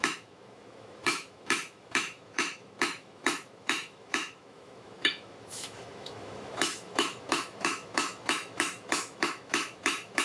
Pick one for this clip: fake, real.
fake